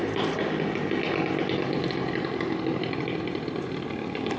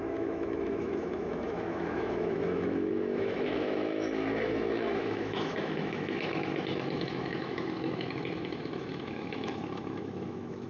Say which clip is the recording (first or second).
first